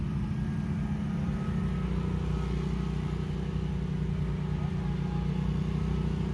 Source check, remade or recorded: recorded